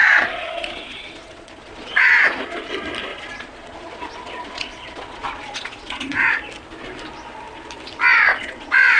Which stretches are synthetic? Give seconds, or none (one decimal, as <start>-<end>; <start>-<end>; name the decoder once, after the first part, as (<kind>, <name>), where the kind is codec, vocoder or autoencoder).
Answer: 0.0-2.6 (vocoder, Vocos); 3.1-6.3; 8.3-9.0